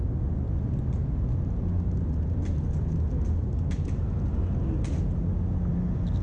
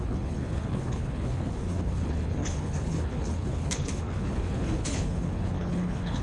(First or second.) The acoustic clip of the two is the first